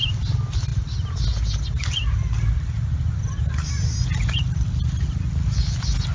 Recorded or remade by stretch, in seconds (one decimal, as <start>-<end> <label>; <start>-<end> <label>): 0.0-6.1 recorded